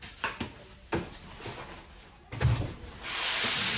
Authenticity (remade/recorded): recorded